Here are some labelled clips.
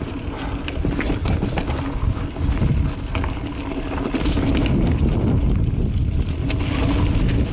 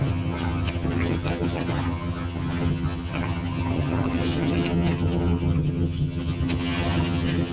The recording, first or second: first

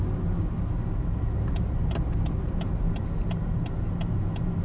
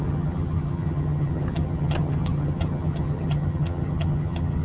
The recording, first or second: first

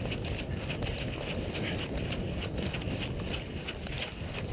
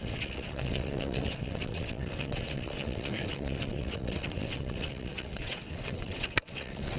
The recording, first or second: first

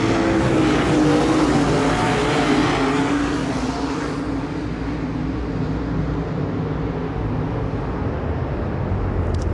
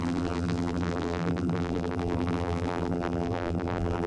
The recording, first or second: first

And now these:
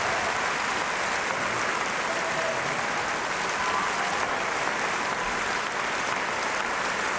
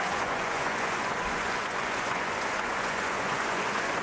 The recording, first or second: first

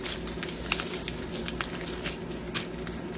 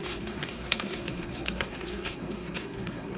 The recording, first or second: first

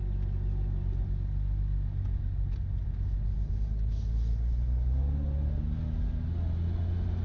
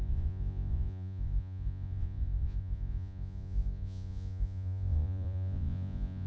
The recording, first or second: first